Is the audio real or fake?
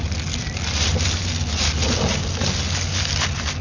real